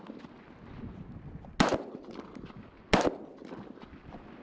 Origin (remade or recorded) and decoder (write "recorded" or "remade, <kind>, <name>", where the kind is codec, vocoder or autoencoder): recorded